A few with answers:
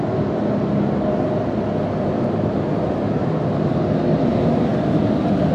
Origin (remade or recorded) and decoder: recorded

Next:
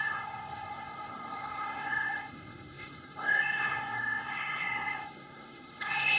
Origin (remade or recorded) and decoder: remade, codec, SNAC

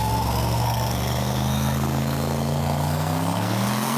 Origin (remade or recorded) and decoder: remade, codec, SNAC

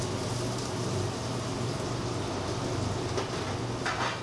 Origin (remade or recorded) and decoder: recorded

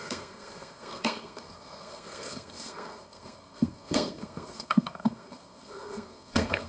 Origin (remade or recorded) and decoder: remade, codec, SNAC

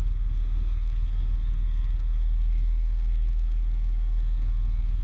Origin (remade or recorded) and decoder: remade, codec, SNAC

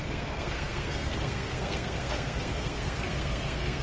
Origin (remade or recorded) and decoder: remade, codec, SNAC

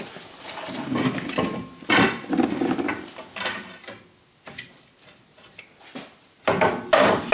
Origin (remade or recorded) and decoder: recorded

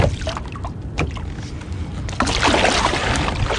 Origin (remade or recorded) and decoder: recorded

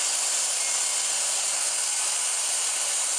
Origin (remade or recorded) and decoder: recorded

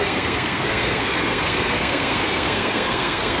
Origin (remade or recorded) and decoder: remade, codec, SNAC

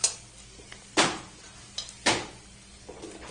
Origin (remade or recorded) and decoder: recorded